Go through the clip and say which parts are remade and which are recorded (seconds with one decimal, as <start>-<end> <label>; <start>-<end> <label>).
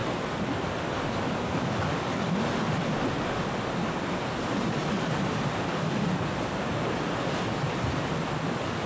0.0-4.8 recorded; 4.8-6.1 remade; 6.1-8.9 recorded